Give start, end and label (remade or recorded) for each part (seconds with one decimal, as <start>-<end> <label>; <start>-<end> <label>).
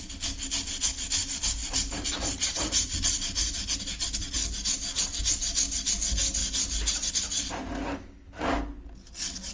0.0-6.4 recorded; 6.4-7.1 remade; 7.1-9.5 recorded